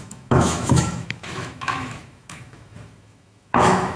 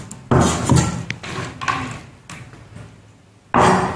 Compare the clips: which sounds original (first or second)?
second